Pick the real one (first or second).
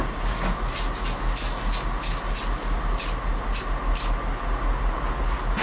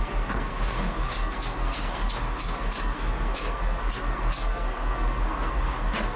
first